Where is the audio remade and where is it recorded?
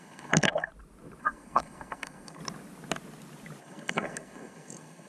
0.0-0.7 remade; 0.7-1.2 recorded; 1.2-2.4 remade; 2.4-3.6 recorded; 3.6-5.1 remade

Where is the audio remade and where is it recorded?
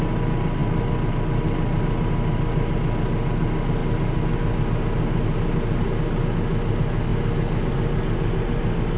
0.0-9.0 recorded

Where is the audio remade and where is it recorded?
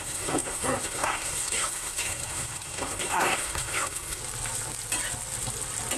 0.0-4.2 remade; 4.2-6.0 recorded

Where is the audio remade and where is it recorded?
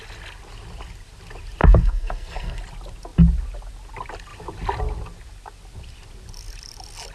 0.0-1.6 recorded; 1.6-2.6 remade; 2.6-7.1 recorded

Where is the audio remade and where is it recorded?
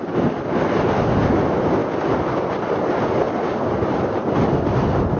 0.0-5.2 recorded